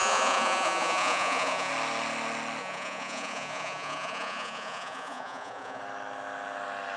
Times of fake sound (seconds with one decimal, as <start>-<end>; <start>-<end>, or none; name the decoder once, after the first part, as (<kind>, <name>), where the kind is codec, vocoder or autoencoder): 0.0-1.7 (vocoder, Vocos); 2.6-5.8